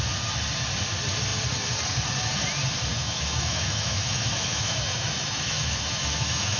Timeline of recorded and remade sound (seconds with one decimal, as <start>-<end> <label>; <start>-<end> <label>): 0.0-2.9 recorded; 2.9-6.6 remade